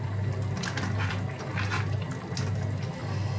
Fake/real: real